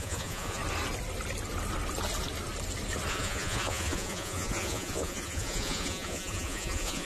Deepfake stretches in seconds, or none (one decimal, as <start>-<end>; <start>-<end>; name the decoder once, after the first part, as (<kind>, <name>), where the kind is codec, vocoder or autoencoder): 0.0-0.6 (vocoder, Vocos); 3.1-7.1